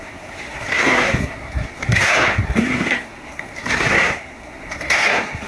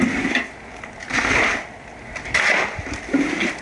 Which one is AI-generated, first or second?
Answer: first